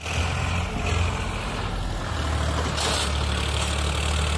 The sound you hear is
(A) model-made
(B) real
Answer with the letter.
B